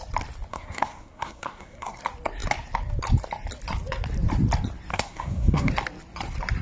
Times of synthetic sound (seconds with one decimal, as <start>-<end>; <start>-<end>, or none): 0.5-2.0; 4.9-5.7